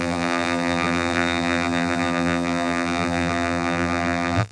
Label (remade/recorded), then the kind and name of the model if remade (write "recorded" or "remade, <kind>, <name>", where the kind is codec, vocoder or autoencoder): remade, vocoder, BigVGAN v2